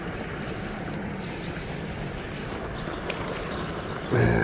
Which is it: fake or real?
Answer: fake